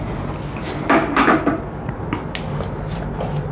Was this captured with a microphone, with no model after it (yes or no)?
yes